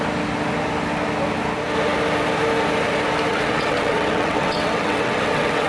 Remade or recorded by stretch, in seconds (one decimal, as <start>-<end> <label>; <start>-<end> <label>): 0.0-3.3 recorded; 3.3-5.7 remade

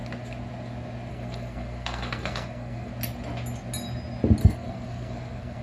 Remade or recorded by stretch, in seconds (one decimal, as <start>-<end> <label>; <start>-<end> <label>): 0.0-1.1 recorded; 1.1-2.9 remade; 2.9-4.4 recorded; 4.4-5.6 remade